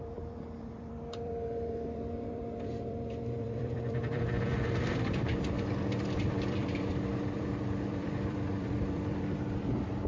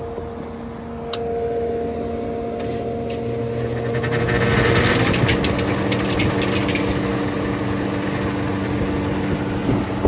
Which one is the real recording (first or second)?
second